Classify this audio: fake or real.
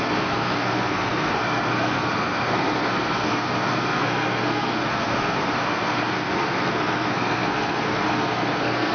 fake